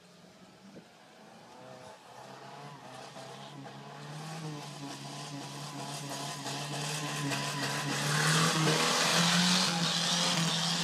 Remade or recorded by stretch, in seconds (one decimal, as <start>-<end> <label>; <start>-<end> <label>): 0.0-10.8 recorded